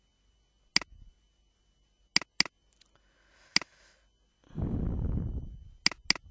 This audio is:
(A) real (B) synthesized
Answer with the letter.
A